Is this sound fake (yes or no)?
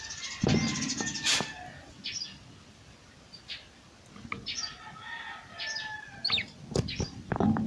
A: no